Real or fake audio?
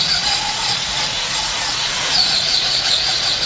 fake